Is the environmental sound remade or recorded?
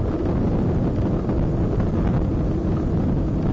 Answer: recorded